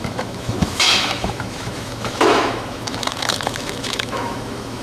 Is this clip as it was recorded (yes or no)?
no